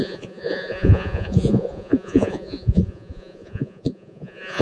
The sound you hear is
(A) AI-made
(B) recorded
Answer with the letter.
A